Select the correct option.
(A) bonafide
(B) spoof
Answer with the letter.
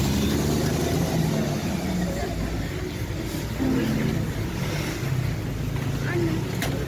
A